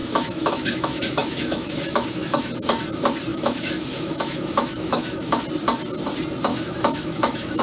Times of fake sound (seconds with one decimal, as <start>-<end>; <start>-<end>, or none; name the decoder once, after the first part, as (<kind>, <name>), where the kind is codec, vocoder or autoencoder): 0.0-2.5 (autoencoder, DAC-VAE); 3.3-5.4; 6.5-7.6